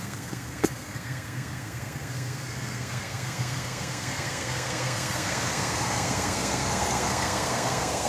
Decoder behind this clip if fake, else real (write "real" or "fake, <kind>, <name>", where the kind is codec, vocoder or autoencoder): fake, codec, SNAC